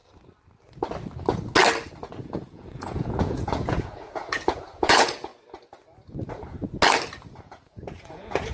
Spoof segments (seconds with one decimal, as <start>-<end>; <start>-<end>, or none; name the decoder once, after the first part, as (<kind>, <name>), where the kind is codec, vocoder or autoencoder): 2.0-5.3 (vocoder, Vocos); 7.3-8.5